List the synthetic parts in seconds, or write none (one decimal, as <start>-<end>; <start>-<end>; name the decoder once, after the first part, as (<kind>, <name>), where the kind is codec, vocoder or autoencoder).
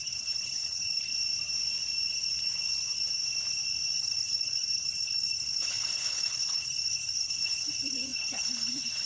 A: 0.0-1.1 (codec, HILCodec); 4.0-9.1